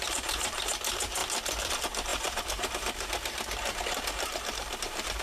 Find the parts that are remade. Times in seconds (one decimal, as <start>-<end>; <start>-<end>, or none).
0.0-1.2; 1.7-5.2